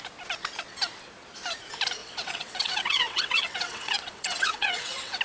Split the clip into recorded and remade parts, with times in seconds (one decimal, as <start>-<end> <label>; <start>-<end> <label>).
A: 0.0-2.0 recorded; 2.0-5.2 remade